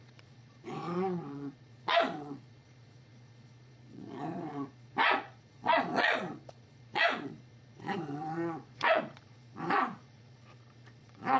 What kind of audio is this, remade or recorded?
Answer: remade